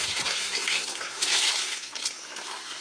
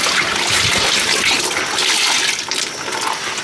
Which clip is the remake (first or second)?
first